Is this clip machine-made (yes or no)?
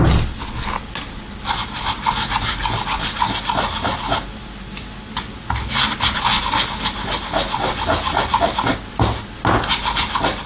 no